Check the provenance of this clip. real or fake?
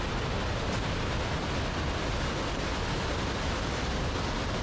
real